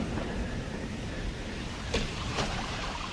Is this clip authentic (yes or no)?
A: no